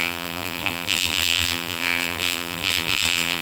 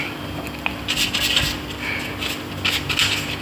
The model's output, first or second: first